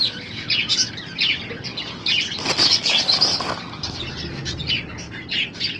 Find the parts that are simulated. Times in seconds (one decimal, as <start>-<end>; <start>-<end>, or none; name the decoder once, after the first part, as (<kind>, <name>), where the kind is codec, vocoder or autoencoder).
none